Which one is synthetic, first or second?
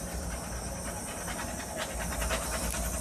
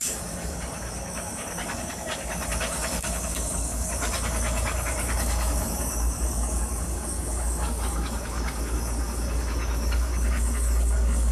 second